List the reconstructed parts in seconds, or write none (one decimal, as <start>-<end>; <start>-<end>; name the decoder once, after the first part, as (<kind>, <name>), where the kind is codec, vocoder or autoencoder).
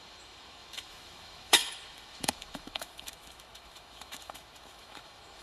0.0-5.4 (autoencoder, DAC-VAE)